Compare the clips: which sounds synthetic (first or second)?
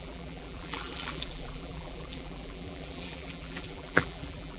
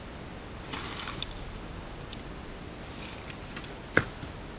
first